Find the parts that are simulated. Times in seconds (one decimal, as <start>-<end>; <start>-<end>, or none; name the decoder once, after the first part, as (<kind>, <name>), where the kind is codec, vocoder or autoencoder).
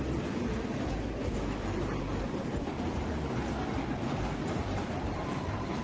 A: 1.6-3.1 (vocoder, BigVGAN v2); 4.6-5.8